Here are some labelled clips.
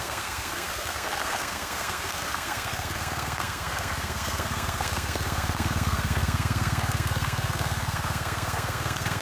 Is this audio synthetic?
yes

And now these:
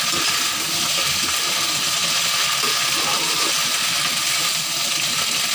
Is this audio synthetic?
no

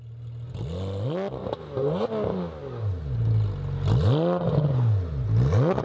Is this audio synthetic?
no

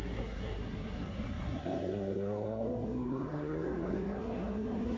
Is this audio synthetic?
yes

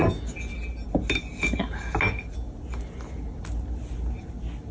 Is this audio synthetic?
no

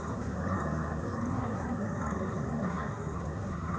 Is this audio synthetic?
yes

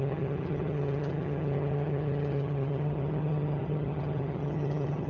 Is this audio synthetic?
yes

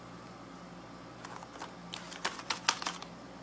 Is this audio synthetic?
no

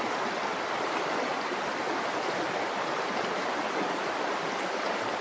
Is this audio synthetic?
yes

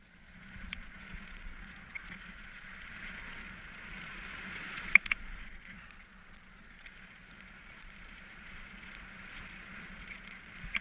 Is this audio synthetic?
yes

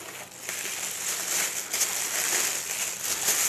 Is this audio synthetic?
no